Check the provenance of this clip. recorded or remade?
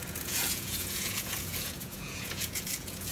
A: remade